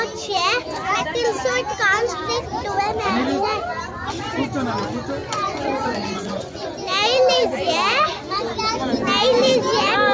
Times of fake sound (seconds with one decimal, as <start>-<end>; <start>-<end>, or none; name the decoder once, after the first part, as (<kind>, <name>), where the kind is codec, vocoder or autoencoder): 5.2-6.7 (vocoder, Vocos)